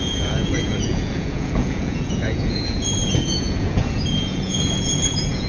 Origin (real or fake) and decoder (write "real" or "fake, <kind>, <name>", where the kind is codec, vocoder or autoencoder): fake, vocoder, Vocos